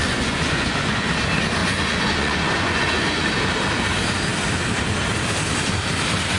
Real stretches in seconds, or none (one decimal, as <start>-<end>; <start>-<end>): 1.1-1.6; 3.3-6.4